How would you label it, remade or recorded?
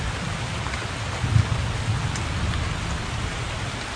recorded